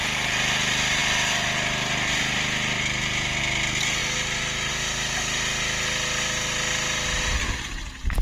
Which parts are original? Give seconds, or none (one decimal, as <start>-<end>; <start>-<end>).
0.0-1.0; 3.4-8.2